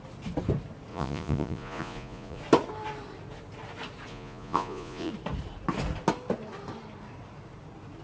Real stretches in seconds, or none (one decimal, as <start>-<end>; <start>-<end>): 0.0-0.9; 2.4-4.1; 5.1-8.0